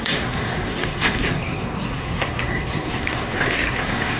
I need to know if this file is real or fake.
fake